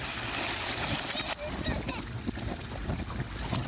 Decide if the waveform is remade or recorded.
recorded